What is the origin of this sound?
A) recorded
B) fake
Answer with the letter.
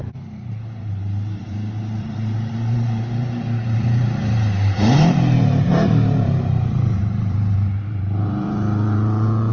B